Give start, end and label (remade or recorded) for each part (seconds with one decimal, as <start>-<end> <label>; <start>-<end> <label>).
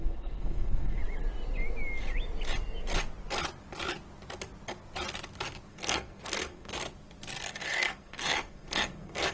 0.0-1.0 remade; 1.0-5.7 recorded; 5.7-6.7 remade; 6.7-7.5 recorded; 7.5-9.3 remade